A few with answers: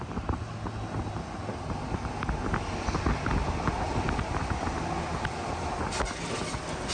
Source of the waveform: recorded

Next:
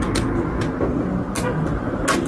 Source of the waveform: recorded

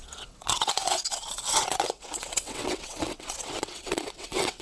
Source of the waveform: remade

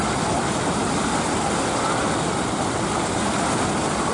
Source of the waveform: remade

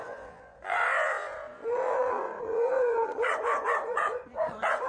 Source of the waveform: remade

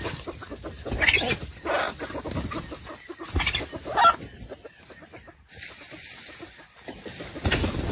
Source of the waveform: recorded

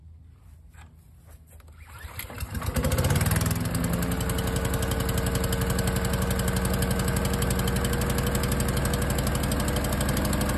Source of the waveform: recorded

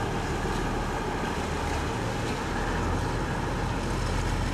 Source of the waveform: recorded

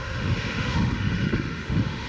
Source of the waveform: remade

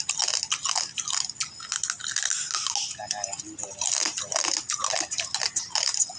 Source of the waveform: recorded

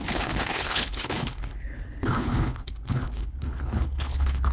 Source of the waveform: remade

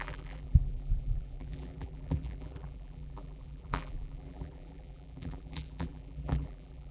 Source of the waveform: remade